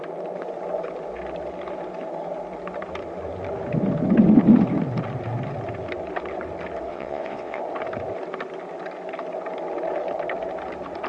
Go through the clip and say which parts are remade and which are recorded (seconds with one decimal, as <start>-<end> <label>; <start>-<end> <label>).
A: 0.0-6.9 recorded; 6.9-7.6 remade; 7.6-11.1 recorded